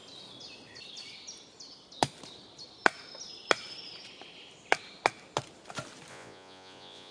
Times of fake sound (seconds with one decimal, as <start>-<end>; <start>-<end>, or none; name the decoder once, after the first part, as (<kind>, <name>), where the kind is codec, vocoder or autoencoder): 6.1-7.1 (vocoder, Vocos)